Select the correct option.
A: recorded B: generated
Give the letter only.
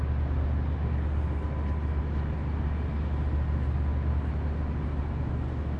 A